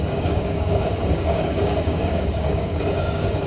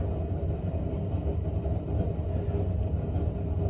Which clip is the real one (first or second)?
second